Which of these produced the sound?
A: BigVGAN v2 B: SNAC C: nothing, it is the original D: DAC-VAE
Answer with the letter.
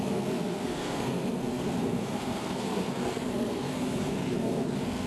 B